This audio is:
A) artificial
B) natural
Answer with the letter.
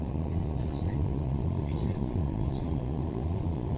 A